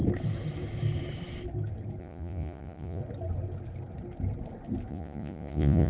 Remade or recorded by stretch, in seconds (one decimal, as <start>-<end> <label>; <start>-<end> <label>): 0.0-2.0 recorded; 2.0-3.0 remade; 3.0-4.9 recorded; 4.9-5.9 remade